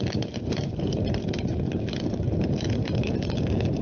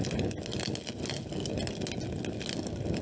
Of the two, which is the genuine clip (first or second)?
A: second